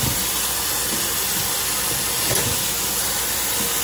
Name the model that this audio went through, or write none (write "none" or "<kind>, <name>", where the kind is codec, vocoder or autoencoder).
none